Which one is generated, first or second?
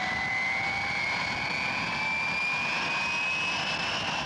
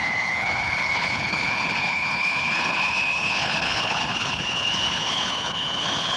second